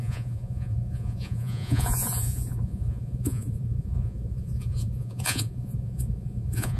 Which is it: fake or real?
fake